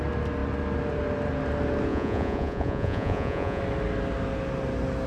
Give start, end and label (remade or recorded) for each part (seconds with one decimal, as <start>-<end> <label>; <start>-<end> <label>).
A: 0.0-1.9 recorded; 1.9-3.6 remade; 3.6-5.1 recorded